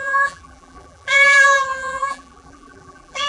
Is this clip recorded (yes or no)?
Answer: no